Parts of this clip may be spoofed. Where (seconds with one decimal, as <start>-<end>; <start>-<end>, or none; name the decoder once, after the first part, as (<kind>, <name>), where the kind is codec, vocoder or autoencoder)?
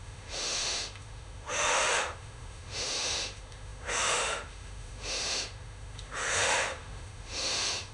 0.0-7.9 (autoencoder, DAC-VAE)